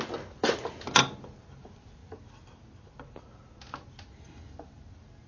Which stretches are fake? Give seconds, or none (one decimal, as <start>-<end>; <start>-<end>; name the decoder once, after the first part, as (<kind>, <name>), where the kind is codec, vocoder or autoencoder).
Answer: none